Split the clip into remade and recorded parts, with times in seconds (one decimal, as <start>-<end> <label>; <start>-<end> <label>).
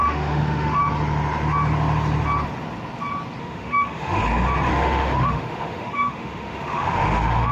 0.0-0.8 remade; 0.8-3.4 recorded; 3.4-4.2 remade; 4.2-4.7 recorded; 4.7-7.5 remade